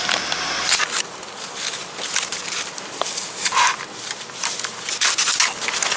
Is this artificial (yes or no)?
no